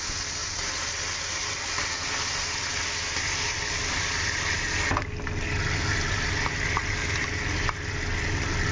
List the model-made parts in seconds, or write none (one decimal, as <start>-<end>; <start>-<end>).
none